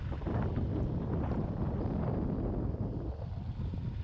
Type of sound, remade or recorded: recorded